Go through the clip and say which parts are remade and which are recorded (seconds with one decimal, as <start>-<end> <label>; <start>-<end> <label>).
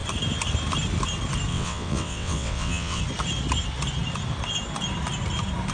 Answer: 0.0-1.5 recorded; 1.5-3.0 remade; 3.0-5.7 recorded